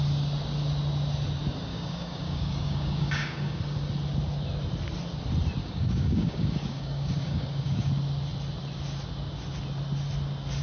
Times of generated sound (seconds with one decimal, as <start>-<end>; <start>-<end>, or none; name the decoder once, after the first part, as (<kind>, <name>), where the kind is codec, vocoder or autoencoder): 1.7-3.6 (codec, DAC); 5.6-7.9